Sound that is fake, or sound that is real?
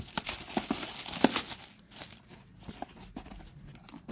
real